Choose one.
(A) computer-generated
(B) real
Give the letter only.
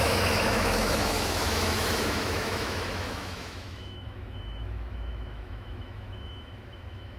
A